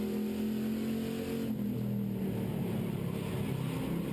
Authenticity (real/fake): real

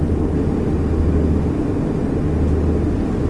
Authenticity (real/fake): real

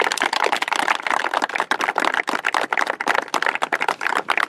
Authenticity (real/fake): real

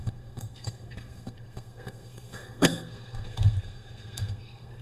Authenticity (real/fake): fake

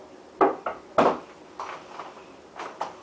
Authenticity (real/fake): real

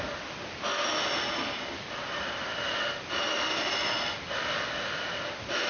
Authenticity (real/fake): real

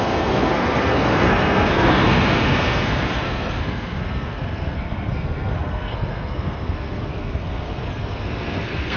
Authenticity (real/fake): fake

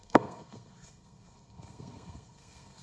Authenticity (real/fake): fake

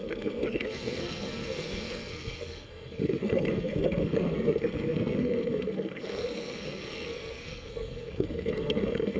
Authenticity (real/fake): fake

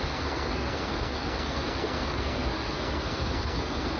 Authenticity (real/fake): fake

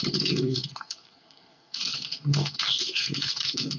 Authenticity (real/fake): fake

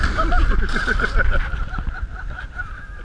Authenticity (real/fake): real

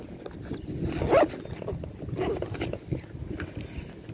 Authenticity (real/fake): real